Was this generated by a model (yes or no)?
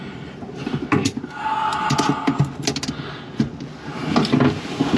no